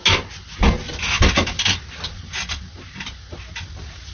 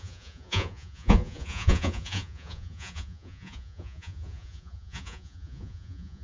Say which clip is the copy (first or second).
second